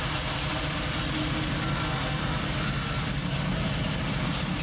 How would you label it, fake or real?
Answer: real